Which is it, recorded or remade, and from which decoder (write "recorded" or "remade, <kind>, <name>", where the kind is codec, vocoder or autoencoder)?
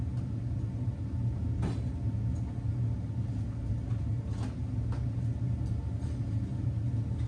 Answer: recorded